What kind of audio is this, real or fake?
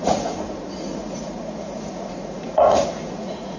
fake